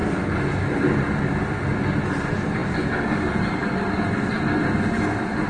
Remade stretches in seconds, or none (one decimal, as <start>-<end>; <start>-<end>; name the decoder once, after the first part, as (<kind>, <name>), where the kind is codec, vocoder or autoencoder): none

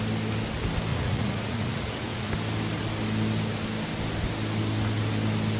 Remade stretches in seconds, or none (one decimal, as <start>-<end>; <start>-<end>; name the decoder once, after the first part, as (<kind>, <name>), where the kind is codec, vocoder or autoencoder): 0.9-2.3 (vocoder, Vocos)

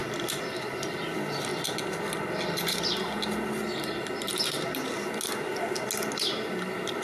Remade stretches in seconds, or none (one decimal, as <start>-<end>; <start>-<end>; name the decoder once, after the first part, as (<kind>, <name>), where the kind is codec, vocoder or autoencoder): none

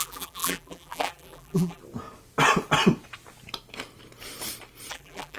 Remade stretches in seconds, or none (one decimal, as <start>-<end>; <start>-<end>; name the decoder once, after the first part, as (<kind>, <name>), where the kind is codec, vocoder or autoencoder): 0.0-1.8 (vocoder, BigVGAN v2); 4.9-5.4

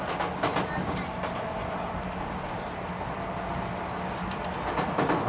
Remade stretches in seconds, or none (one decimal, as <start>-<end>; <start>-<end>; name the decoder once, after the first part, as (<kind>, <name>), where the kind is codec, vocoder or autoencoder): none

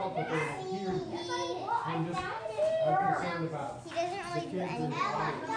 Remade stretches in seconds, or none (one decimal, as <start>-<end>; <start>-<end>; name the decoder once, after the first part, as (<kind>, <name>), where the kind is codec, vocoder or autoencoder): none

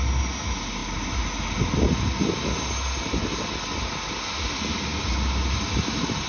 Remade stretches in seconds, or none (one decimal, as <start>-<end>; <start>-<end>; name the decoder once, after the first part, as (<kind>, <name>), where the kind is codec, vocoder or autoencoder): none